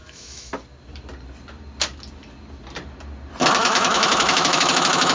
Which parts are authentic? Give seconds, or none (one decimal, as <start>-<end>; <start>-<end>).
0.5-3.6